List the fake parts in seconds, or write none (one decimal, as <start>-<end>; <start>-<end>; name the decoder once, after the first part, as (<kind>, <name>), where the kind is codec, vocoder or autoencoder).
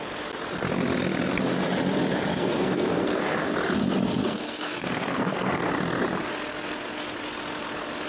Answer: 2.3-3.2 (codec, SNAC); 4.2-5.7